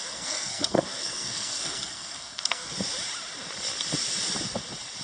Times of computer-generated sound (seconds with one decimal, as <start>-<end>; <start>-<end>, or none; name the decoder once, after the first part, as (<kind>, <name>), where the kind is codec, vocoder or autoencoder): 0.0-2.7 (codec, SNAC)